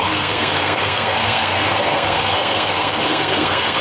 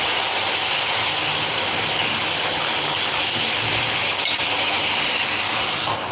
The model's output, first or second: first